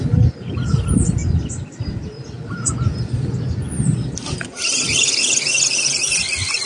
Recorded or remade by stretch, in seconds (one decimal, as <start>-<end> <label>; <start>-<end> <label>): 0.0-6.7 recorded